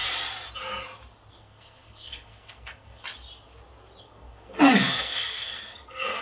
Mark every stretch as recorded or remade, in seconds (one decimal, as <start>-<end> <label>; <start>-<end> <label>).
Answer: 0.0-1.3 recorded; 1.3-3.0 remade; 3.0-4.0 recorded; 4.0-6.2 remade